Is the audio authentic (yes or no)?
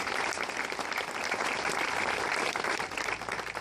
yes